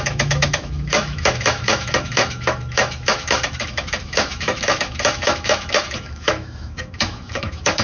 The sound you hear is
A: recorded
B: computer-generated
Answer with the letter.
B